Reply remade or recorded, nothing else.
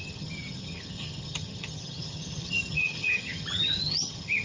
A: remade